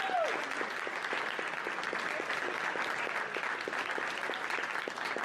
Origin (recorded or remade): recorded